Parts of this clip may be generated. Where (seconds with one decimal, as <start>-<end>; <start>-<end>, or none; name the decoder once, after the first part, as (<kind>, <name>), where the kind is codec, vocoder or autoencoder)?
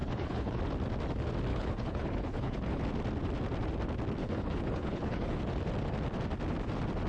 0.0-0.6 (codec, HILCodec); 1.5-2.8; 4.2-5.4